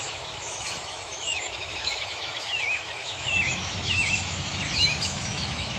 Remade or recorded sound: remade